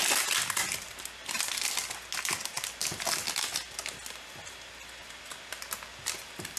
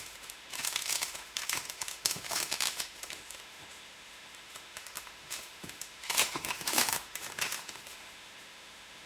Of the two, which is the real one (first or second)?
first